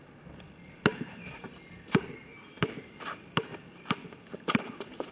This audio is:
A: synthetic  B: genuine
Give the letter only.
B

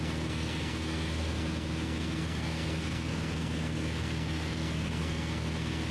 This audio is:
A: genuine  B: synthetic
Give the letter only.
B